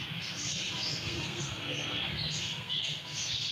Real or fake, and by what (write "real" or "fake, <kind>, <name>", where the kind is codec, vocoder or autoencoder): fake, codec, SNAC